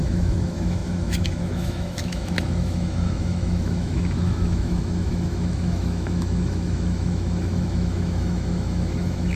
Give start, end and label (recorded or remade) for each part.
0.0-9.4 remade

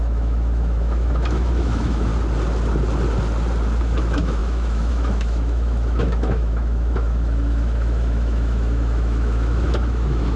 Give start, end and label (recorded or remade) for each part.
0.0-2.1 remade; 2.1-3.8 recorded; 3.8-10.4 remade

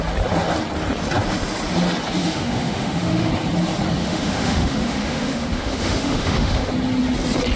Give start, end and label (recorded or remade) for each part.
0.0-2.2 recorded; 2.2-3.3 remade; 3.3-4.0 recorded; 4.0-6.7 remade; 6.7-7.6 recorded

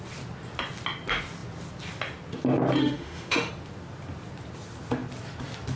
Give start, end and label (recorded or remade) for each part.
0.0-2.8 recorded; 2.8-3.5 remade; 3.5-5.8 recorded

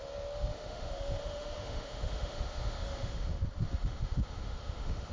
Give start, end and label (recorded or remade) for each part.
0.0-0.5 recorded; 0.5-3.4 remade; 3.4-3.8 recorded; 3.8-5.1 remade